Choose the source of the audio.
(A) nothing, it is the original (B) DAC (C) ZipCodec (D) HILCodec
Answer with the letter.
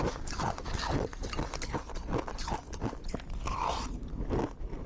A